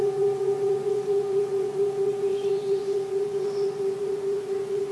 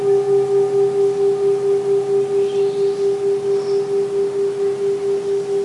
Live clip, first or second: second